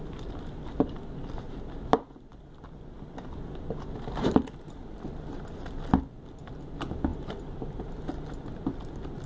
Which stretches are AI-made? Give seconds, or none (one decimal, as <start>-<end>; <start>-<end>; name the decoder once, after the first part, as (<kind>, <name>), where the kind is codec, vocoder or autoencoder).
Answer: none